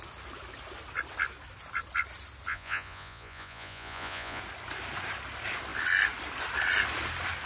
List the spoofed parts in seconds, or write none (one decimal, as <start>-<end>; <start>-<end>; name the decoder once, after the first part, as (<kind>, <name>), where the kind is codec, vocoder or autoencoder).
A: 2.5-4.4 (vocoder, Vocos)